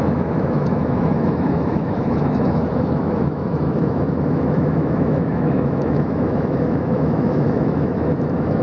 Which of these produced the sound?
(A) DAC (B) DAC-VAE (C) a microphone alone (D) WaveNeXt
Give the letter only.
B